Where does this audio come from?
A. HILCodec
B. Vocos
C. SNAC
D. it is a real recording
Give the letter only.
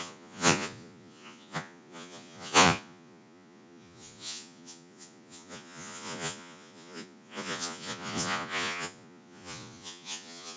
B